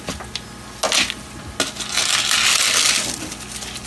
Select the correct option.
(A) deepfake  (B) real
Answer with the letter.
B